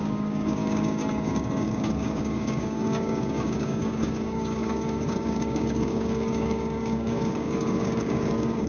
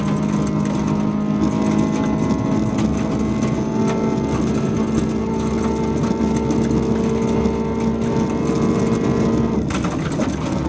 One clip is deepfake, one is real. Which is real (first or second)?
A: second